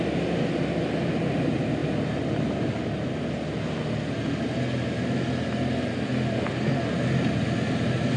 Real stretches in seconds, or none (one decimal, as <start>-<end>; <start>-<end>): 0.0-8.2